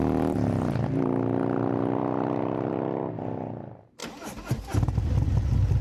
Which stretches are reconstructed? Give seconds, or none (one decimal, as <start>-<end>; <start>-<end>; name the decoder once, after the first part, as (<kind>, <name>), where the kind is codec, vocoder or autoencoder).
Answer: 0.0-4.0 (vocoder, BigVGAN v2)